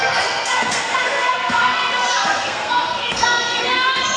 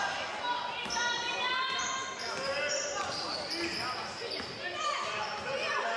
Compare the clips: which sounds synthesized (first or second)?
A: first